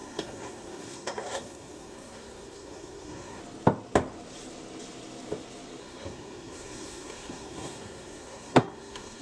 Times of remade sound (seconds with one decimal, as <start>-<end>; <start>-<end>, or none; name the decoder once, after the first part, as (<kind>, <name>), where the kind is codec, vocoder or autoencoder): 0.0-3.4 (codec, SNAC); 5.8-9.2